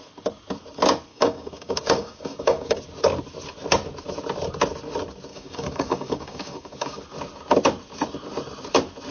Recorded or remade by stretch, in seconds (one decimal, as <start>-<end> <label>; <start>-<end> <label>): 0.0-1.1 recorded; 1.1-2.8 remade; 2.8-5.3 recorded; 5.3-7.0 remade; 7.0-9.1 recorded